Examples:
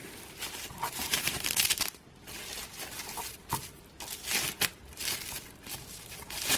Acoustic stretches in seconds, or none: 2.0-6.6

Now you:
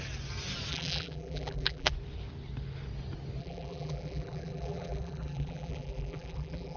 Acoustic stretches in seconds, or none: 0.0-0.7; 1.9-3.4

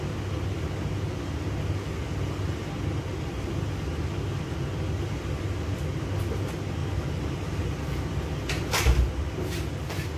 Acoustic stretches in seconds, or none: 0.0-10.2

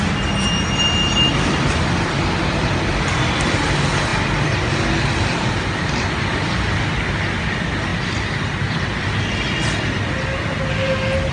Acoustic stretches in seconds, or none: 0.0-1.3; 2.9-7.9; 9.0-11.3

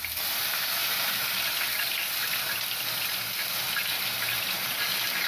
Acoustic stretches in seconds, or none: 0.0-5.3